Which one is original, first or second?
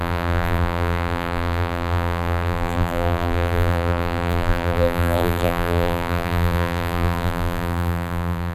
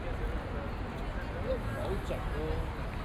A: second